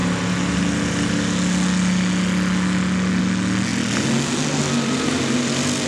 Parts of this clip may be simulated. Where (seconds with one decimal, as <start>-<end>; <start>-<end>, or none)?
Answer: none